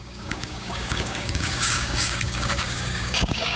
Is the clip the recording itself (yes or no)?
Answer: no